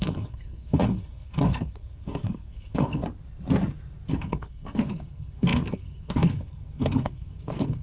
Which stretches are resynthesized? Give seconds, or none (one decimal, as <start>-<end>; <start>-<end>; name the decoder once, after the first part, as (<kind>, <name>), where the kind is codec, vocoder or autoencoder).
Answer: 0.0-3.0 (codec, SNAC); 4.1-7.8